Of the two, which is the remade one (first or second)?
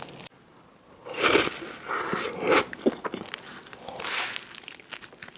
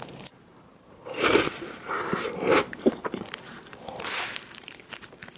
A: second